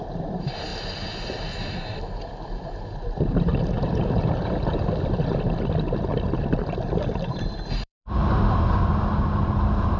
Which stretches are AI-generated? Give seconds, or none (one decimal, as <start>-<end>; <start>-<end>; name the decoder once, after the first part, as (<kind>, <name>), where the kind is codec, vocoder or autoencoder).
0.0-0.7 (vocoder, BigVGAN v2); 1.7-3.5; 7.1-10.0